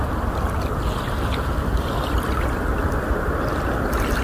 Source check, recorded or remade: recorded